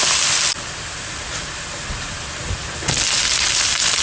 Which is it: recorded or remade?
recorded